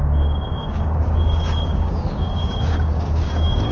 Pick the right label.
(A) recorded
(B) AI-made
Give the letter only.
B